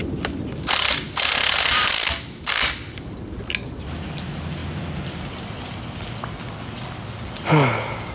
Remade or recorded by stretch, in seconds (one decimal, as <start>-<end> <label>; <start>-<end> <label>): 0.0-8.1 recorded